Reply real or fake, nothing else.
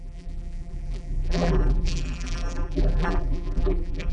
fake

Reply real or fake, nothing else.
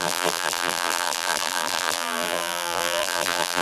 fake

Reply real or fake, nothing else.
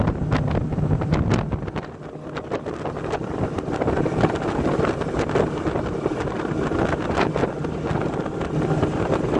real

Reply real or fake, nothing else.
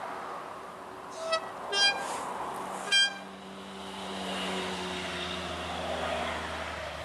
real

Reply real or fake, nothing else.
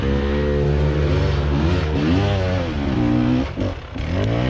real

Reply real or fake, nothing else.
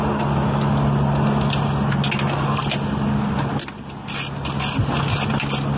real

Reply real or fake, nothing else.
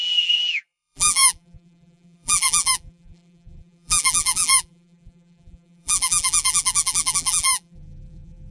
fake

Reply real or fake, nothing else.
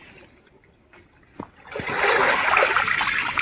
real